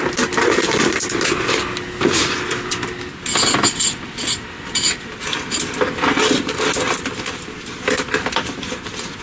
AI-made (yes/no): no